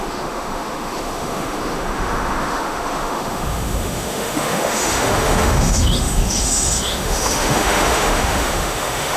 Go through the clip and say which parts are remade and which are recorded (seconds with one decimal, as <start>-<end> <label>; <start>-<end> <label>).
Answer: 0.0-9.2 remade